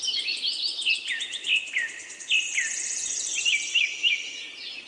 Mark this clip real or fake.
real